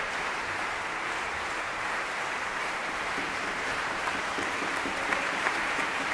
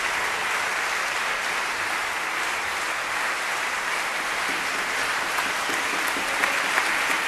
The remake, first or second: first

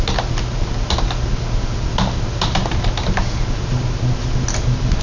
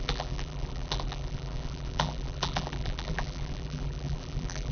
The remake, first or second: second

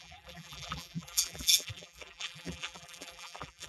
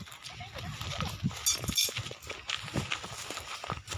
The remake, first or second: first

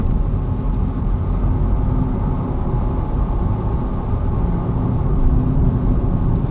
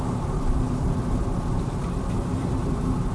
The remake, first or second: second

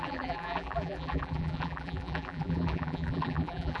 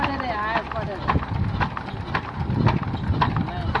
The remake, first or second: first